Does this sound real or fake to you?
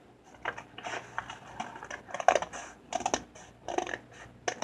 real